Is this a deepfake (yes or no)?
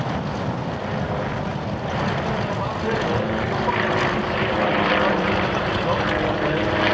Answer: no